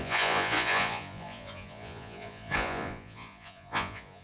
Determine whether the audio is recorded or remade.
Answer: remade